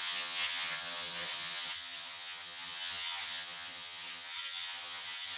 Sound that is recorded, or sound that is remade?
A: remade